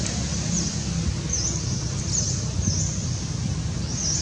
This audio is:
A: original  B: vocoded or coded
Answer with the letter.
A